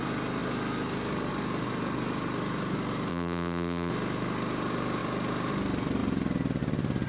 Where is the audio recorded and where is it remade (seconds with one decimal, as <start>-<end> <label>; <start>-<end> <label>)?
0.0-3.1 recorded; 3.1-3.9 remade; 3.9-7.1 recorded